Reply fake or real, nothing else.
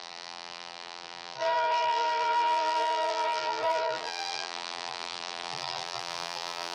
fake